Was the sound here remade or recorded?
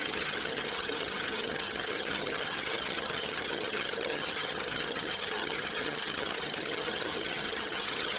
remade